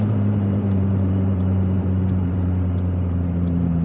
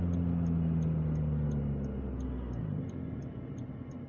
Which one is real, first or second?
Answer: second